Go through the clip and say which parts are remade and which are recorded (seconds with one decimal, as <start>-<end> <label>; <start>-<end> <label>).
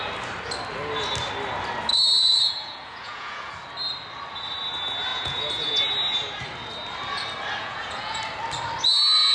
0.0-1.9 recorded; 1.9-3.5 remade; 3.5-5.1 recorded; 5.1-5.8 remade; 5.8-7.6 recorded; 7.6-8.2 remade; 8.2-9.3 recorded